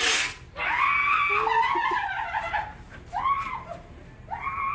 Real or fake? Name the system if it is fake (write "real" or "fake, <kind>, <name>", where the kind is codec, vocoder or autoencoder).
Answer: real